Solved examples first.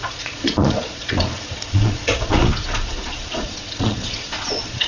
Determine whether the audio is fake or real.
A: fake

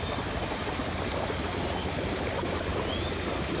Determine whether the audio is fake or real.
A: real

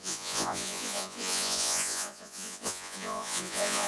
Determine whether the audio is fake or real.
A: fake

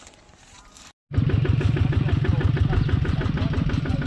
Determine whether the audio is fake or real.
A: real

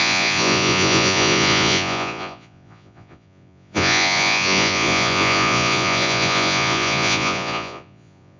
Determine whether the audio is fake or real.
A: fake